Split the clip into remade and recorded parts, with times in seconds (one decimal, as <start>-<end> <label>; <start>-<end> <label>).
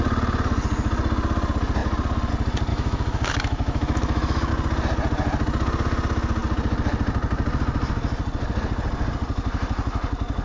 0.0-2.7 recorded; 2.7-4.5 remade; 4.5-10.4 recorded